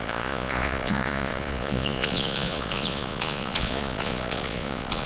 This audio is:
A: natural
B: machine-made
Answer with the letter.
B